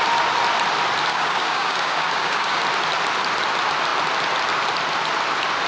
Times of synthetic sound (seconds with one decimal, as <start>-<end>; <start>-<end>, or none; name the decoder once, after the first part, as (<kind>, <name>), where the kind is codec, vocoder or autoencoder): 1.1-2.6 (codec, DAC)

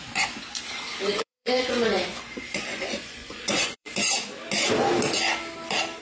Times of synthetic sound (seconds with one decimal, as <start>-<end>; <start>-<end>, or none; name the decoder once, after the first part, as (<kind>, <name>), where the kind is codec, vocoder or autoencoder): 1.1-1.9 (vocoder, Vocos); 2.7-3.9